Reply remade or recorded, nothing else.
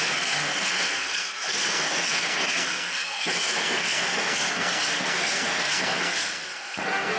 remade